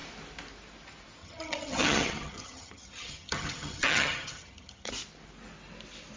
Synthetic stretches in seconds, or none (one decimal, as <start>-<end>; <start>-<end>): 1.2-4.9